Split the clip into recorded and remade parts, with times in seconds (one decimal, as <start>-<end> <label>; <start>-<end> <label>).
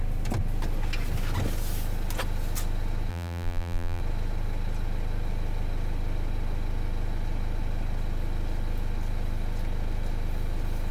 0.0-3.1 recorded; 3.1-4.0 remade; 4.0-10.9 recorded